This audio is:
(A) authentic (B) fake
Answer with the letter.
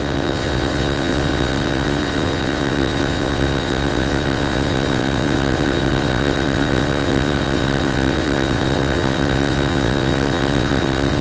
B